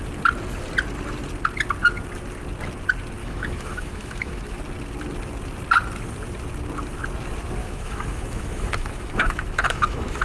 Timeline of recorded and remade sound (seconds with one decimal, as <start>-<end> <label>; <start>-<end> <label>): 0.0-3.2 recorded; 3.2-4.6 remade; 4.6-7.6 recorded; 7.6-10.2 remade